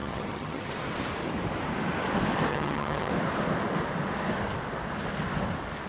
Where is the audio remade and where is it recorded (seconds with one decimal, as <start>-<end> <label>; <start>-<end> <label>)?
0.0-0.7 remade; 0.7-2.5 recorded; 2.5-3.1 remade; 3.1-5.9 recorded